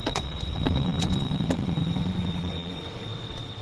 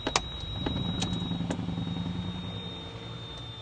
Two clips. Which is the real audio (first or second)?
second